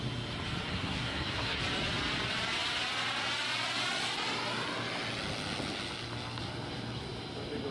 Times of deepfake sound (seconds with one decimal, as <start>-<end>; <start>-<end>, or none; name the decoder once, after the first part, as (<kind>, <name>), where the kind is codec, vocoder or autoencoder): 0.7-1.6 (codec, SNAC)